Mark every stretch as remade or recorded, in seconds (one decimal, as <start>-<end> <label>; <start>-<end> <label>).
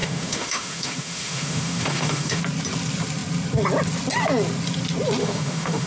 0.0-2.4 remade; 2.4-5.2 recorded; 5.2-5.9 remade